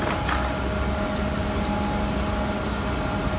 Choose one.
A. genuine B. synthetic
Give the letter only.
A